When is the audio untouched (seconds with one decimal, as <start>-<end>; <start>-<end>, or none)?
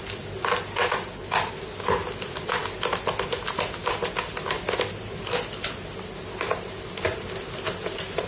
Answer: 0.0-8.3